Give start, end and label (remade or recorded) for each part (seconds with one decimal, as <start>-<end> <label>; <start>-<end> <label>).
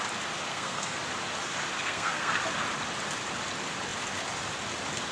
0.0-0.5 recorded; 0.5-1.0 remade; 1.0-1.8 recorded; 1.8-2.4 remade; 2.4-5.1 recorded